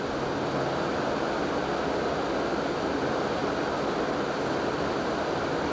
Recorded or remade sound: recorded